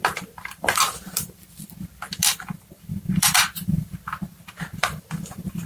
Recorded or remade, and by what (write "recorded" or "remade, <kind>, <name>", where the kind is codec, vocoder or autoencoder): remade, vocoder, BigVGAN v2